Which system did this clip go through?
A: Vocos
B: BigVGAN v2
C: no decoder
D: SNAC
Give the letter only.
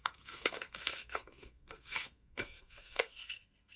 D